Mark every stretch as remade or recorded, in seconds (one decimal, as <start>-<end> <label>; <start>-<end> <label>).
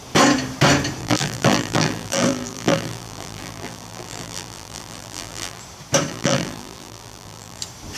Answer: 0.0-1.0 recorded; 1.0-5.6 remade; 5.6-6.1 recorded; 6.1-7.6 remade; 7.6-8.0 recorded